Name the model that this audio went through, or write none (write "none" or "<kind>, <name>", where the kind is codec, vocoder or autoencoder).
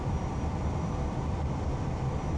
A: vocoder, BigVGAN v2